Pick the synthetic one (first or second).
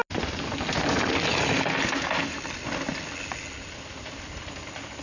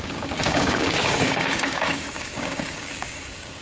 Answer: second